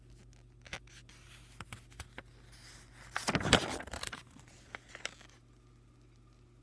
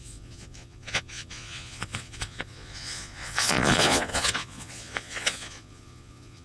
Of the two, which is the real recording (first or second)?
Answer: first